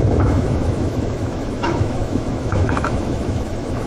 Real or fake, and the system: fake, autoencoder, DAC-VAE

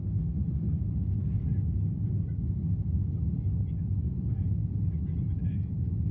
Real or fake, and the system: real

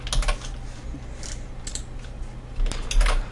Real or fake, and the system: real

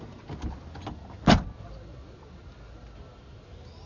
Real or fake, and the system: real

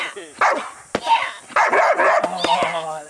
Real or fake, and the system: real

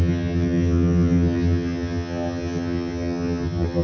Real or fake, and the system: fake, vocoder, HiFi-GAN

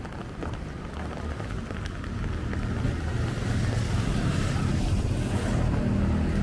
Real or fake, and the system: real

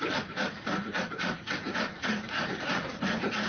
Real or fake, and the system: fake, vocoder, Vocos